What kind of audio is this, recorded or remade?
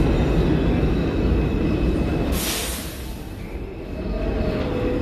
recorded